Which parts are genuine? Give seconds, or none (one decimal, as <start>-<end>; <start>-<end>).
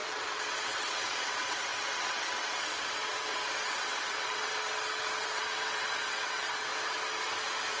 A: 6.7-7.8